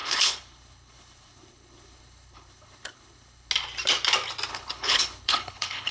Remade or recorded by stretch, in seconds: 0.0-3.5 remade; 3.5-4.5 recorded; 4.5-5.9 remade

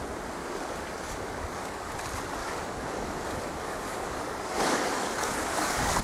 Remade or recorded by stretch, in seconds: 0.0-0.4 recorded; 0.4-1.9 remade; 1.9-2.4 recorded; 2.4-6.0 remade

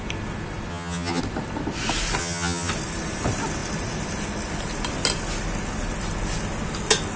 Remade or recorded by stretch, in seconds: 0.0-0.7 recorded; 0.7-1.2 remade; 1.2-2.2 recorded; 2.2-2.7 remade; 2.7-7.2 recorded

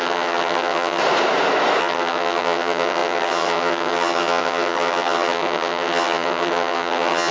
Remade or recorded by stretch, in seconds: 0.0-1.0 remade; 1.0-1.8 recorded; 1.8-7.3 remade

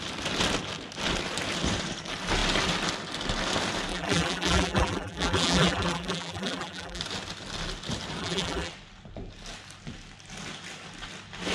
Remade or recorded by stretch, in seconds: 0.0-3.9 recorded; 3.9-7.0 remade; 7.0-8.2 recorded; 8.2-8.7 remade; 8.7-11.5 recorded

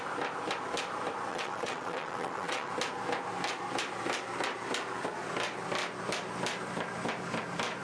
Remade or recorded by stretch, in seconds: 0.0-1.3 recorded; 1.3-2.7 remade; 2.7-7.8 recorded

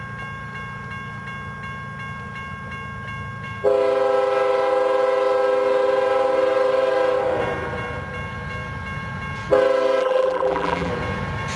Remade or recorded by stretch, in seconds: 0.0-10.0 recorded; 10.0-10.9 remade; 10.9-11.6 recorded

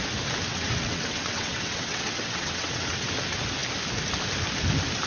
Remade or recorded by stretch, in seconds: 0.0-0.5 recorded; 0.5-3.1 remade; 3.1-5.1 recorded